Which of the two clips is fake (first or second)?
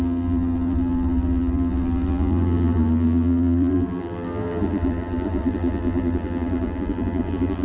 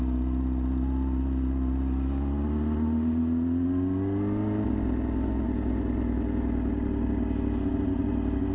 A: first